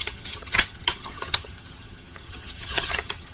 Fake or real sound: fake